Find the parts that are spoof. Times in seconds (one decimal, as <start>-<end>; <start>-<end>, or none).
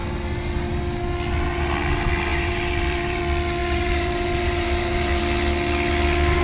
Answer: 2.3-3.2; 3.6-5.2